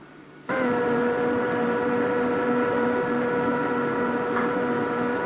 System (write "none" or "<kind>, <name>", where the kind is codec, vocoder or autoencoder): vocoder, BigVGAN v2